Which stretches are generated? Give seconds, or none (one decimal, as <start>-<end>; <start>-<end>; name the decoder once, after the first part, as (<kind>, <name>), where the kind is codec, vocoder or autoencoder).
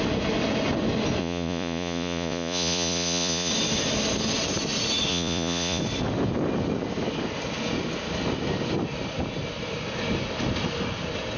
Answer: 1.2-3.5 (vocoder, Vocos); 5.1-5.8